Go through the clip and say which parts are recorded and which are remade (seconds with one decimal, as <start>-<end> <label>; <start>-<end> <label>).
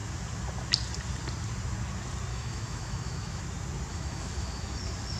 0.0-2.3 recorded; 2.3-3.4 remade; 3.4-3.9 recorded; 3.9-4.8 remade; 4.8-5.2 recorded